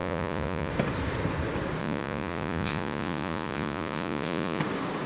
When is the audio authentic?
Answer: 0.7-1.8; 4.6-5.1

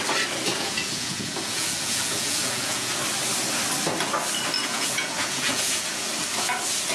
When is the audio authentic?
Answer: 0.0-0.5; 2.9-4.6; 6.1-6.9

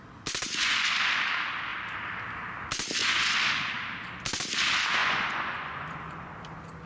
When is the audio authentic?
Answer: 0.0-0.6; 1.2-3.0; 3.7-5.0; 6.3-6.9

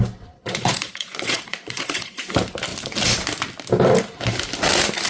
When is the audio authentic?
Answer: 0.0-0.4; 2.2-5.1

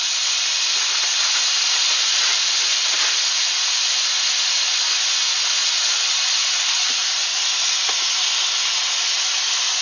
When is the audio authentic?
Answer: 0.0-9.8

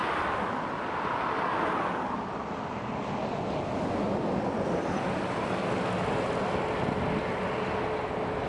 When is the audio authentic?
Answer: 0.0-8.5

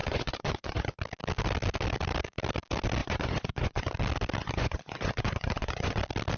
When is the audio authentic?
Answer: 1.0-3.0; 3.9-4.4; 6.0-6.4